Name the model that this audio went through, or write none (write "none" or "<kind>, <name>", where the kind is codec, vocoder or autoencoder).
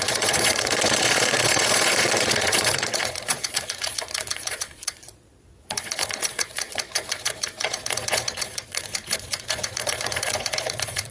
vocoder, Vocos